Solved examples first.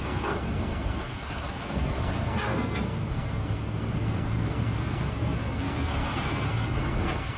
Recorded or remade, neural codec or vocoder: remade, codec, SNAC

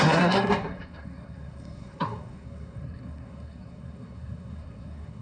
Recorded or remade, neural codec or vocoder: remade, codec, SNAC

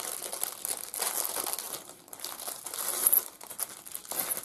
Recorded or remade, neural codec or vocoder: recorded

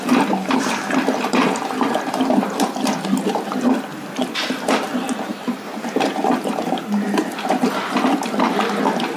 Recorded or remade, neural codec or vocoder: recorded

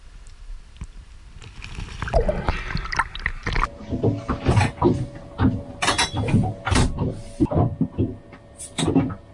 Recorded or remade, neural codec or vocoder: recorded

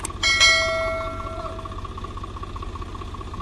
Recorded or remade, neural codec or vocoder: recorded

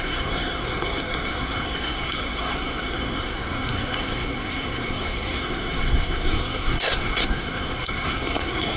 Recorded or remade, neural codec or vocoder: remade, codec, SNAC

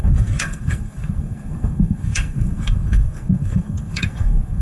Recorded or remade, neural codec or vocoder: remade, codec, SNAC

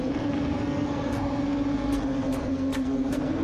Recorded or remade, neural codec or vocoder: remade, codec, SNAC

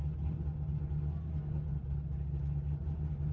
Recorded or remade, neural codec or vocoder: recorded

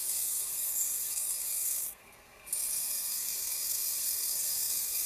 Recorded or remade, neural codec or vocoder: remade, codec, SNAC